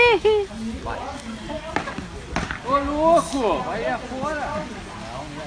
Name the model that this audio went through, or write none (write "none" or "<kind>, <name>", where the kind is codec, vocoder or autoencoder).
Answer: none